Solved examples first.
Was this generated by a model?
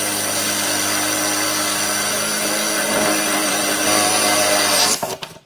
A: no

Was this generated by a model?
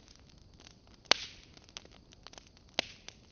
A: no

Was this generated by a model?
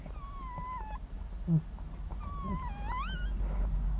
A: no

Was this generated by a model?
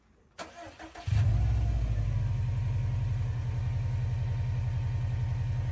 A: no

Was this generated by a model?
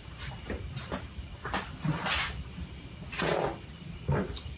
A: yes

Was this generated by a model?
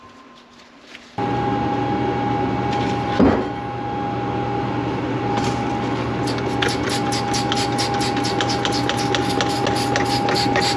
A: no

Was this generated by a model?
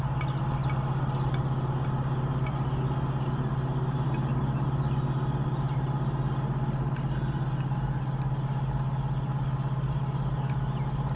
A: no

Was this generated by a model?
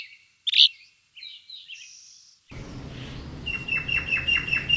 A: no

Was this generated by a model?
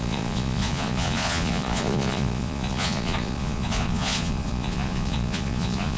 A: yes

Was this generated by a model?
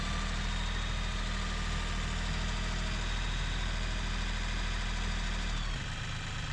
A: no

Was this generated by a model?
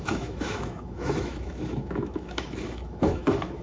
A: yes